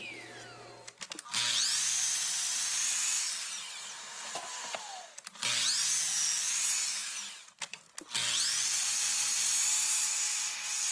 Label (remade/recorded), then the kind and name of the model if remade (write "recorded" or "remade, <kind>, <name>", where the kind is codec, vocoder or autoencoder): recorded